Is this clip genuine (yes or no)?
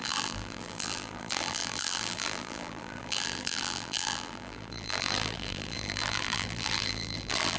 no